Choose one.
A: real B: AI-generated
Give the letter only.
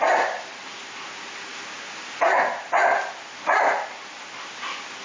A